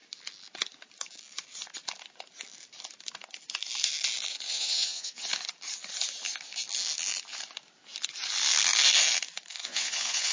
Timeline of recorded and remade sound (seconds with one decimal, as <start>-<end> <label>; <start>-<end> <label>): 0.0-4.3 recorded; 4.3-5.3 remade; 5.3-9.5 recorded; 9.5-10.3 remade